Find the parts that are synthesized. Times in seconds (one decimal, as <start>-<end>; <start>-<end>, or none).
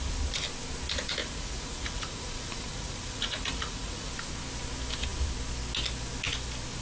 1.2-4.1